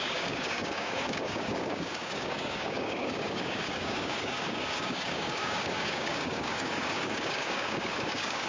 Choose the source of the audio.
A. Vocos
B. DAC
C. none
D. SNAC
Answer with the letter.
B